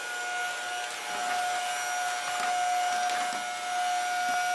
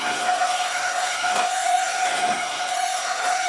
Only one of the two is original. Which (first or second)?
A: first